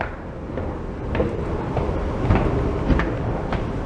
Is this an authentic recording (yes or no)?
yes